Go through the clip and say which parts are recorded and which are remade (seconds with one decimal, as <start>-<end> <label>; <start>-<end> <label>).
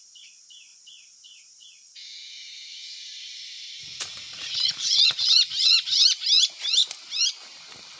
0.0-0.7 recorded; 0.7-5.3 remade; 5.3-8.0 recorded